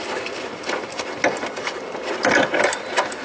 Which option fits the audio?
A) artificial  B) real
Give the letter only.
B